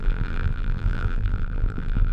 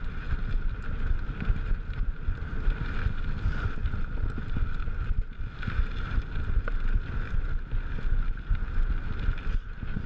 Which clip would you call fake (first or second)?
first